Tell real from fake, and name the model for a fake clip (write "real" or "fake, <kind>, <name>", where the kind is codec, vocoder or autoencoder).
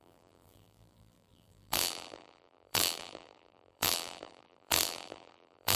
fake, vocoder, BigVGAN v2